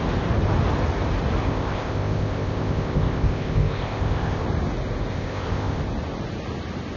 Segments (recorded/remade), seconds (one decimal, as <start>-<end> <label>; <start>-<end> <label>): 0.0-1.4 recorded; 1.4-4.4 remade; 4.4-5.1 recorded; 5.1-5.8 remade; 5.8-7.0 recorded